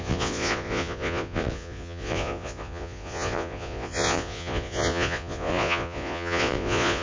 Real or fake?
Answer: fake